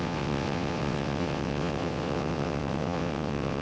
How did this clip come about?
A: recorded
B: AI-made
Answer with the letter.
B